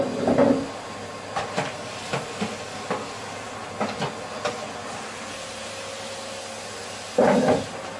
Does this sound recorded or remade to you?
recorded